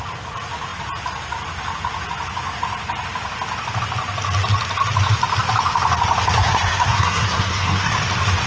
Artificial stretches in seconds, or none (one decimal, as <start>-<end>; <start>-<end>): 6.4-7.9